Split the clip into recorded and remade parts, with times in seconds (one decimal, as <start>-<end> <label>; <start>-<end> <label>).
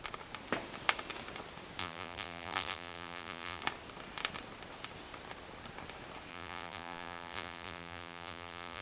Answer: 0.0-1.8 recorded; 1.8-3.6 remade; 3.6-6.3 recorded; 6.3-8.8 remade